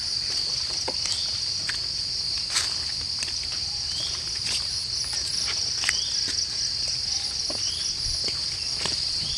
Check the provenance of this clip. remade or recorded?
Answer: recorded